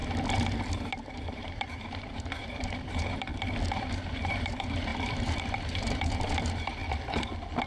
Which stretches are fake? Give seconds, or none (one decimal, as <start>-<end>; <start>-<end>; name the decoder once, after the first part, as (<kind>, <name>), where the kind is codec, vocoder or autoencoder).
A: 1.1-3.3 (vocoder, BigVGAN v2); 3.8-6.8